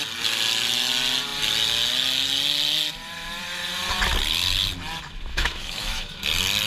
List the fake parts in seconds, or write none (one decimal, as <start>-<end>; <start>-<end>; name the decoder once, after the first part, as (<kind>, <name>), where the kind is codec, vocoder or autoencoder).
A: 5.3-6.2 (autoencoder, DAC-VAE)